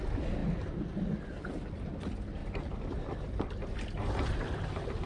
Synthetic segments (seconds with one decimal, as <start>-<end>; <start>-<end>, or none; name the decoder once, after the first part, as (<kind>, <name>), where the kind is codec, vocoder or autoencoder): none

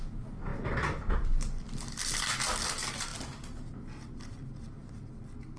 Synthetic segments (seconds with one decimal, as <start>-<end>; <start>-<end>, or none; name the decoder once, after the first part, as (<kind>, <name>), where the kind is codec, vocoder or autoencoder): none

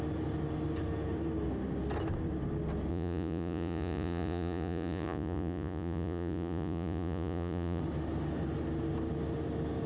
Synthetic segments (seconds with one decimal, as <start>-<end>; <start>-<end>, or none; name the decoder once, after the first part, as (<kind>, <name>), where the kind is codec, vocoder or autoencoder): 2.9-7.8 (vocoder, Vocos)